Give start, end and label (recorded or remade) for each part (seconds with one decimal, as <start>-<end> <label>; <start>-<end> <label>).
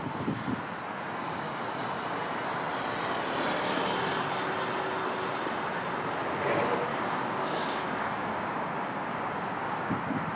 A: 0.0-6.9 recorded; 6.9-9.9 remade; 9.9-10.4 recorded